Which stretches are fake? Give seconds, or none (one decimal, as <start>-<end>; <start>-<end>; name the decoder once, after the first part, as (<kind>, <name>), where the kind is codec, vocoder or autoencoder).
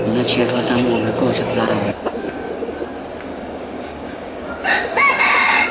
0.4-1.4 (codec, DAC); 3.3-5.2